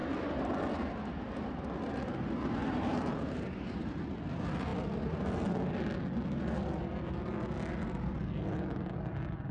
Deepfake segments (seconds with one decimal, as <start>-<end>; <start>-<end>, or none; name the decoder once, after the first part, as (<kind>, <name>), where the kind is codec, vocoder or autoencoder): 2.6-4.0 (vocoder, BigVGAN v2)